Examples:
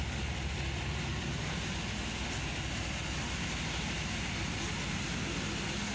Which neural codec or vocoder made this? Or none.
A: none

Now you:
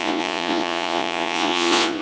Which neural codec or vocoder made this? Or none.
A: vocoder, Vocos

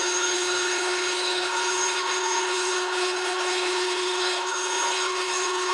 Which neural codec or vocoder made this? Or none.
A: codec, HILCodec